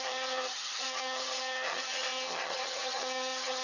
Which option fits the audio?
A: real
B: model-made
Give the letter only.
B